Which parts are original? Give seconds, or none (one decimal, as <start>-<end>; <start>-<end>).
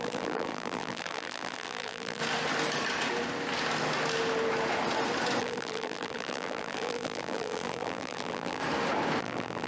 2.2-5.4; 8.6-9.2